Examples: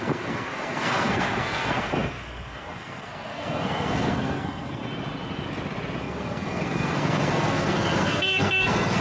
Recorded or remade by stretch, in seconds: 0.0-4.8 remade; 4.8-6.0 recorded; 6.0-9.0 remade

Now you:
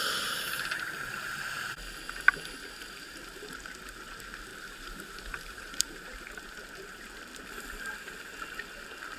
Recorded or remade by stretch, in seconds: 0.0-4.5 recorded; 4.5-7.1 remade; 7.1-9.2 recorded

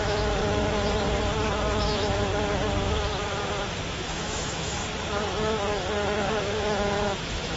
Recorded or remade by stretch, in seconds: 0.0-0.4 remade; 0.4-1.8 recorded; 1.8-2.3 remade; 2.3-3.9 recorded; 3.9-4.8 remade; 4.8-6.4 recorded; 6.4-7.6 remade